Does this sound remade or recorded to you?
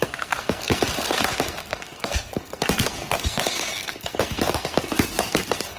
remade